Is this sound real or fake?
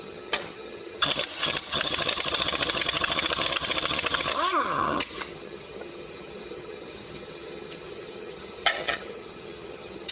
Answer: fake